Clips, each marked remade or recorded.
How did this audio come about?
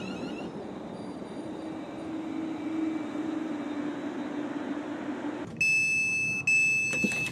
recorded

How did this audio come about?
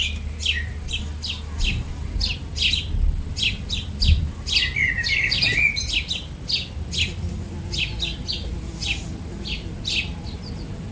recorded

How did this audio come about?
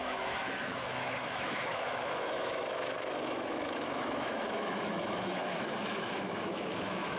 remade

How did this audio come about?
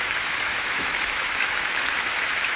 remade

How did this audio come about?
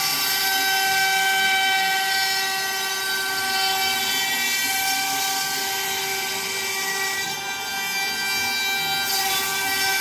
recorded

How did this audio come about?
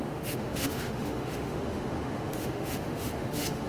remade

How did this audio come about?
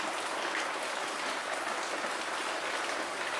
recorded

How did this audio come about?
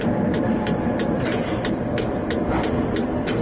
recorded